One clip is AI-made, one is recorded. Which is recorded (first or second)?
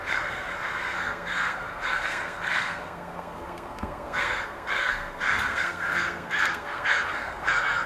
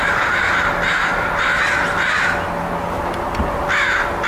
second